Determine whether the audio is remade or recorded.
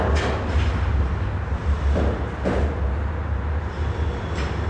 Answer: recorded